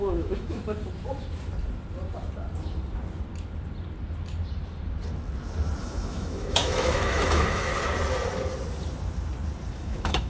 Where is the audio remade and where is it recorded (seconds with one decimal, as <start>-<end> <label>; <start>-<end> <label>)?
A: 0.0-0.6 remade; 0.6-5.8 recorded; 5.8-7.7 remade; 7.7-9.7 recorded; 9.7-10.3 remade